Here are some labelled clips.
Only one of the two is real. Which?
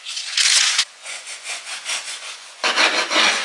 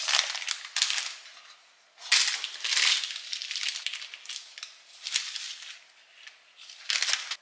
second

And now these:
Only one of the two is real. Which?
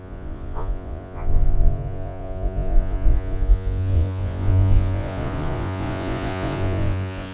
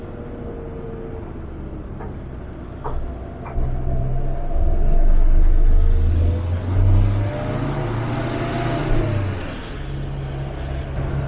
second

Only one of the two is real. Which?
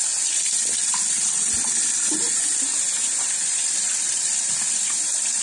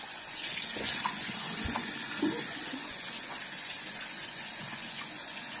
first